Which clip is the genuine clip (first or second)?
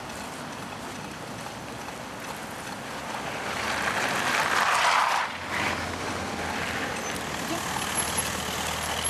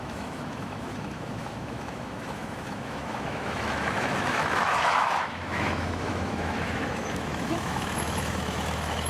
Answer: first